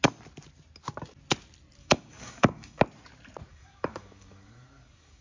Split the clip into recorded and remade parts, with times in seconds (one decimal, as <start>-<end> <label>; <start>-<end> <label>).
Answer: 0.0-1.8 recorded; 1.8-2.8 remade; 2.8-3.5 recorded; 3.5-5.2 remade